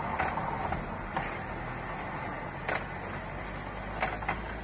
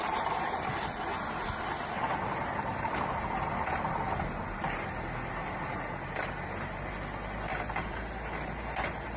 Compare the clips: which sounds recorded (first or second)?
first